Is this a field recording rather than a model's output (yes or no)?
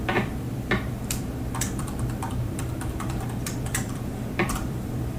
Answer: no